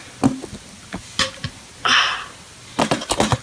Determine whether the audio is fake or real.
real